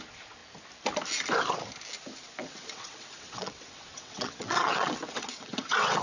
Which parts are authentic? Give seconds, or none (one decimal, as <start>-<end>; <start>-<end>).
0.0-2.4